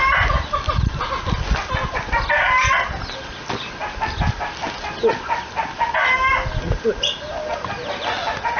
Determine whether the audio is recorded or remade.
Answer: recorded